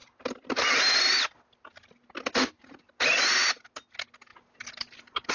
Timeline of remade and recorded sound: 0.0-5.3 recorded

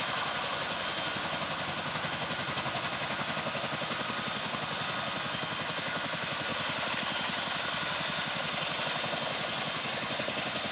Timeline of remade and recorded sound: 0.0-6.5 remade; 6.5-8.8 recorded; 8.8-10.7 remade

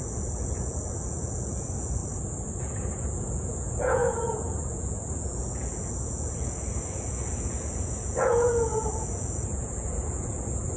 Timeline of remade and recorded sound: 0.0-2.0 remade; 2.0-2.6 recorded; 2.6-10.8 remade

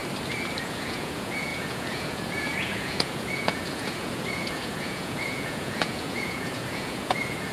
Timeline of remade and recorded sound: 0.0-0.6 recorded; 0.6-7.5 remade

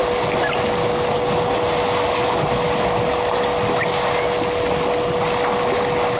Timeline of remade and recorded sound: 0.0-6.2 recorded

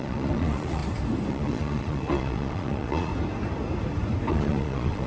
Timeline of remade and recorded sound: 0.0-0.8 remade; 0.8-1.3 recorded; 1.3-3.1 remade; 3.1-4.3 recorded; 4.3-5.1 remade